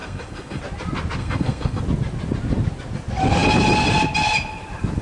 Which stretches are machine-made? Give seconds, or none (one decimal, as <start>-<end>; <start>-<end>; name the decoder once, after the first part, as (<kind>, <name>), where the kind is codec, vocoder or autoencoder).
0.0-0.6 (codec, SNAC); 1.2-1.8